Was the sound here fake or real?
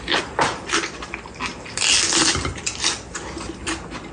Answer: real